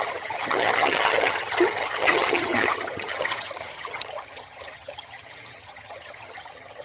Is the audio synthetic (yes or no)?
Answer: yes